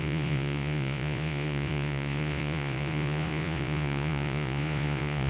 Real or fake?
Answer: fake